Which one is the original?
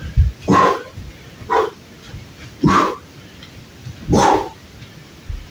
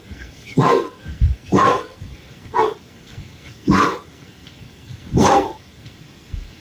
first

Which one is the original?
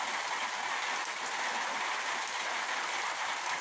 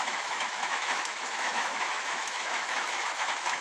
first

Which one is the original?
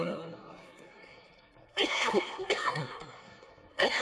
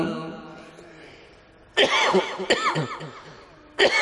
second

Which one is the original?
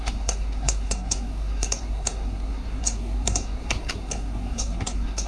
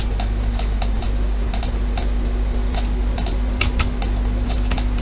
second